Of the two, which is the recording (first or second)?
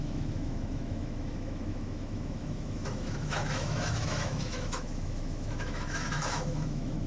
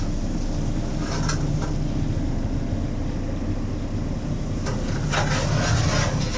second